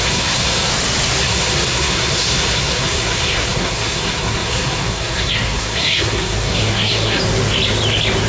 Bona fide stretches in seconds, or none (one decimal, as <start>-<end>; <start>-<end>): 0.7-1.2; 7.2-8.3